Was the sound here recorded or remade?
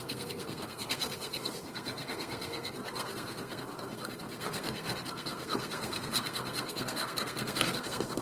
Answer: remade